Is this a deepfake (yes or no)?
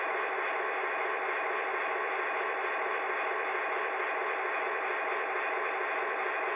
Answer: no